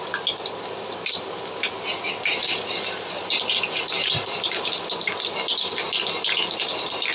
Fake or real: real